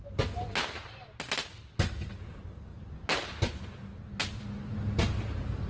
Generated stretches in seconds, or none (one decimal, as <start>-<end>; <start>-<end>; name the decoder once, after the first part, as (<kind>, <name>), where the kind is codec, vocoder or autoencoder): none